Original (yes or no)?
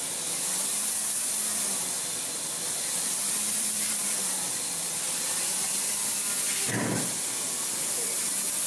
no